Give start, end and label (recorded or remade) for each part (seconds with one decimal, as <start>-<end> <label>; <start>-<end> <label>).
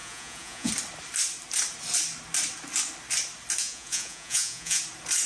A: 0.0-0.7 remade; 0.7-3.6 recorded; 3.6-4.8 remade; 4.8-5.3 recorded